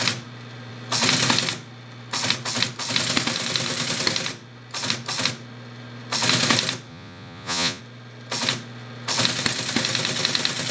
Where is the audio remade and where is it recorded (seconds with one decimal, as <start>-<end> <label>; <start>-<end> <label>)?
0.0-6.9 recorded; 6.9-7.8 remade; 7.8-10.7 recorded